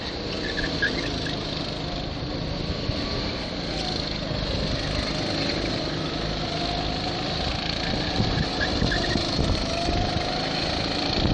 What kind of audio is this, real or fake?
real